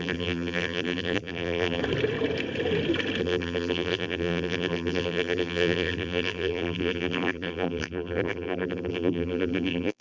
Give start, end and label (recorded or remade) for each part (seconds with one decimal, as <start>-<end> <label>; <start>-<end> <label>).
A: 0.0-1.8 remade; 1.8-3.2 recorded; 3.2-10.0 remade